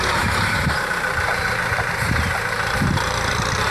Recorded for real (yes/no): no